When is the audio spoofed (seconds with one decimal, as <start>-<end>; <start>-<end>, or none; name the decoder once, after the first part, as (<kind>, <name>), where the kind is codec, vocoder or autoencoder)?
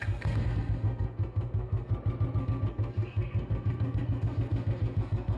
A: 0.0-1.9 (codec, SNAC); 2.4-5.4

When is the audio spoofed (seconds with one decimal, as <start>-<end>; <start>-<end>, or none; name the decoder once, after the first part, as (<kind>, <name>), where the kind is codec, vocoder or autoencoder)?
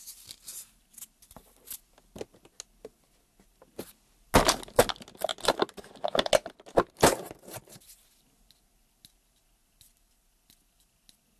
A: none